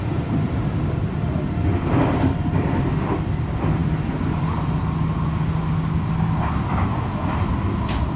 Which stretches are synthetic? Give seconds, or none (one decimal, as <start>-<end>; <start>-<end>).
none